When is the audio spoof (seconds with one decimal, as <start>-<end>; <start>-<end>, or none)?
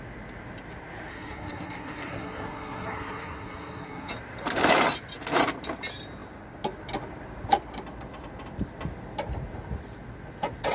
1.1-4.1